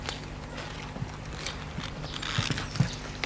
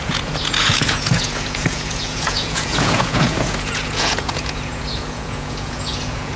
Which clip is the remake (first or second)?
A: second